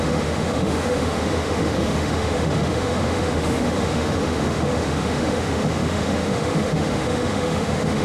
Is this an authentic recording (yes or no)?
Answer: no